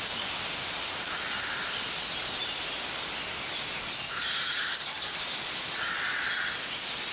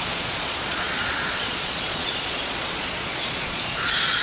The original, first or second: first